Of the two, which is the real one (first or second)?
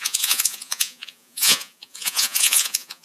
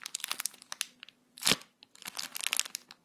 second